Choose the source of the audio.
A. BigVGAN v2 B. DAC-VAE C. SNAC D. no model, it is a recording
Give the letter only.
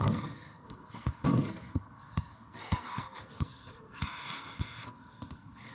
C